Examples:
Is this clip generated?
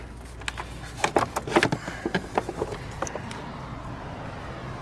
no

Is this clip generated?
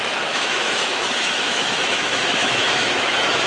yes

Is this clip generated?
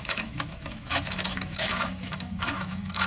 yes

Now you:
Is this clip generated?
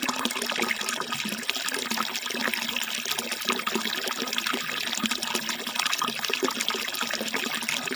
no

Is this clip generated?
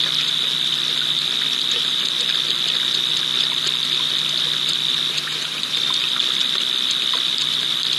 no